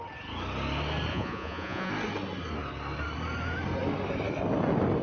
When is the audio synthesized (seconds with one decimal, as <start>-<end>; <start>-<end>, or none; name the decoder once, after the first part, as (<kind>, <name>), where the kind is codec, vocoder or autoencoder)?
1.1-1.9 (vocoder, Vocos)